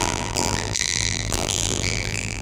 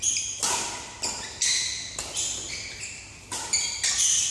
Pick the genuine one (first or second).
second